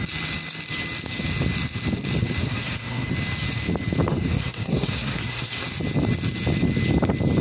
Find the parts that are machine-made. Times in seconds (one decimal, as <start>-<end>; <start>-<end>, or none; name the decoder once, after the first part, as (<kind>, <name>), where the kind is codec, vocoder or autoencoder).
2.4-3.1 (codec, SNAC); 4.1-5.5